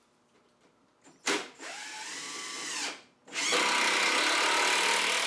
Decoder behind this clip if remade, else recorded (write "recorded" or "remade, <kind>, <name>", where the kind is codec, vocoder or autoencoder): recorded